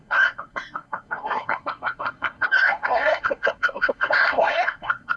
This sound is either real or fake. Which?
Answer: fake